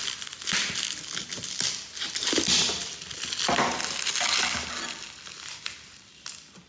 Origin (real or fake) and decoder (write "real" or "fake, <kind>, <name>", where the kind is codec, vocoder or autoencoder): real